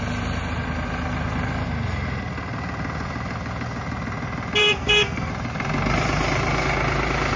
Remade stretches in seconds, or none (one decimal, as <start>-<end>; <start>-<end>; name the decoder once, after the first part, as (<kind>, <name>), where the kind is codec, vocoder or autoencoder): 4.6-5.3 (codec, SNAC)